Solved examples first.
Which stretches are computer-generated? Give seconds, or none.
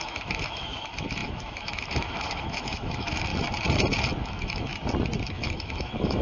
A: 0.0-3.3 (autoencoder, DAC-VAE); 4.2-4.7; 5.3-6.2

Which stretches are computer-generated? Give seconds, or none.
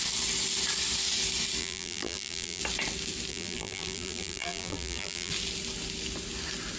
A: 1.6-2.6 (vocoder, BigVGAN v2); 3.3-5.3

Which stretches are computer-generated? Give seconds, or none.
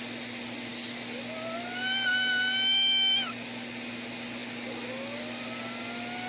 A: none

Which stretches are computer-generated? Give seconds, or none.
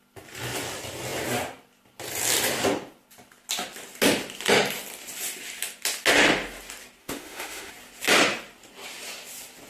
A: 7.0-7.7 (autoencoder, DAC-VAE)